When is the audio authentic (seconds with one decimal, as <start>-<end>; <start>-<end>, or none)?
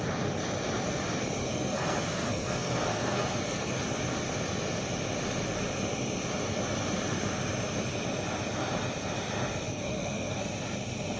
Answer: 0.0-1.4; 3.8-9.7; 10.4-11.2